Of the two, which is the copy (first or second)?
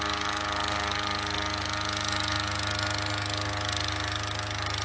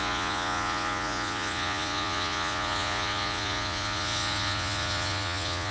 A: second